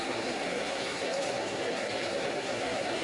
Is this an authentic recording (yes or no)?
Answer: no